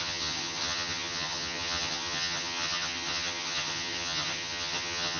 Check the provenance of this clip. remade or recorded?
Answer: remade